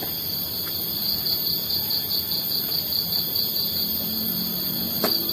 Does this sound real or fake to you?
real